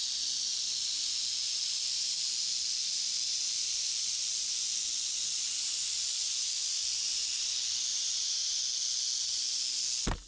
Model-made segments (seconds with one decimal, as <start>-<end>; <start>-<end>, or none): 7.9-8.6